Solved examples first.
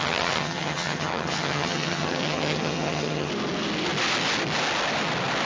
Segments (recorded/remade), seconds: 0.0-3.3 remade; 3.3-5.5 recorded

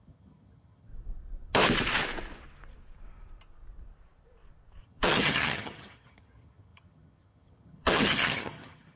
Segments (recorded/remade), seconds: 0.0-0.9 remade; 0.9-4.8 recorded; 4.8-9.0 remade

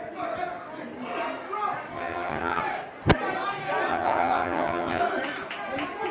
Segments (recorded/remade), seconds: 0.0-1.9 recorded; 1.9-2.6 remade; 2.6-3.9 recorded; 3.9-5.0 remade; 5.0-6.1 recorded

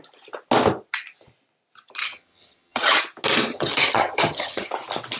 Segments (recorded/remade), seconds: 0.0-2.0 recorded; 2.0-3.0 remade; 3.0-3.5 recorded; 3.5-4.7 remade; 4.7-5.2 recorded